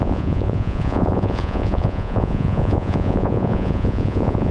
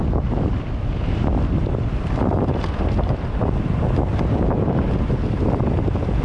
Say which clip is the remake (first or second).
first